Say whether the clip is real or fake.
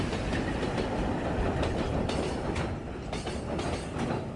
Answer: real